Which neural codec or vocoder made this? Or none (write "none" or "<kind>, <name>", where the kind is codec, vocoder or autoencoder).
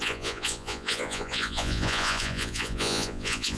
vocoder, Vocos